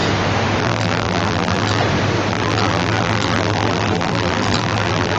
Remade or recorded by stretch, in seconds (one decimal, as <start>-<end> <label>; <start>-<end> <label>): 0.0-0.6 recorded; 0.6-1.8 remade; 1.8-2.3 recorded; 2.3-5.2 remade